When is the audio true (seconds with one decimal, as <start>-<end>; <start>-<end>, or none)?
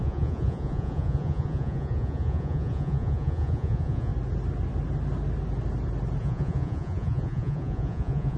4.1-6.2